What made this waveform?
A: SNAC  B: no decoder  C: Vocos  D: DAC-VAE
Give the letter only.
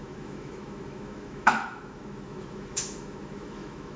D